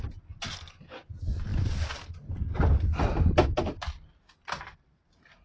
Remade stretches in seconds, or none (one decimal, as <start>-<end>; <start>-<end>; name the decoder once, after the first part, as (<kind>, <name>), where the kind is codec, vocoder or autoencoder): none